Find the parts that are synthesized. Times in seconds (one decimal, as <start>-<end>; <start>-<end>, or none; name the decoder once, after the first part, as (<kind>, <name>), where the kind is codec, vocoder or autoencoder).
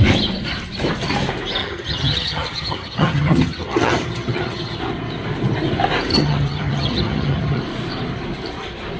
1.6-4.8 (vocoder, HiFi-GAN); 6.1-7.6